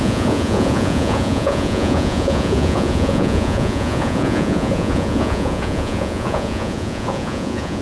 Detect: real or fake fake